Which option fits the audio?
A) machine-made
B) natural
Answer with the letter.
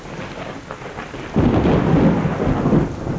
B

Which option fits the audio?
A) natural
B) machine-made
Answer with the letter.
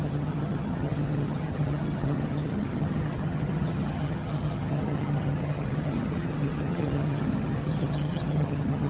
B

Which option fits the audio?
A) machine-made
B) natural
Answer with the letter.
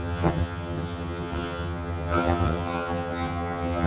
A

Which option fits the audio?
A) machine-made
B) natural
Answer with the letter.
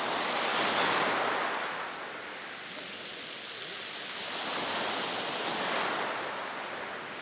B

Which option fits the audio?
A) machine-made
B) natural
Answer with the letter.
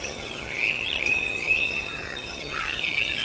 A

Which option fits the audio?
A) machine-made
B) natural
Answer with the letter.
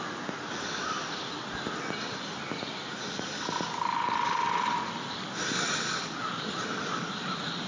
B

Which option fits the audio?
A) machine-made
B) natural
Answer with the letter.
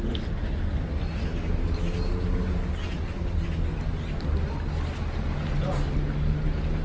B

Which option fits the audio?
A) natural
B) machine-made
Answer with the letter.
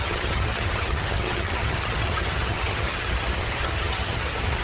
B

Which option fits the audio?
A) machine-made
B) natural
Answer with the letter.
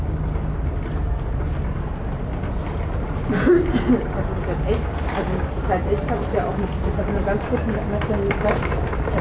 B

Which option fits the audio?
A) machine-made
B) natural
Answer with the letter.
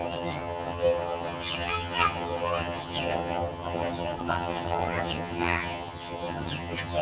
A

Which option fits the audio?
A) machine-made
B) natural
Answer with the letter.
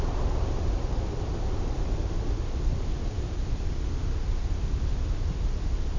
B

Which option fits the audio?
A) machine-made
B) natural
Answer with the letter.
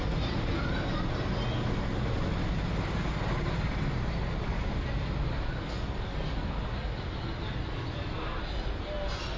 B